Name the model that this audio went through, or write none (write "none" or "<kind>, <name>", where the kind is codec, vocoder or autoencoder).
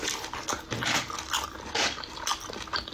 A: none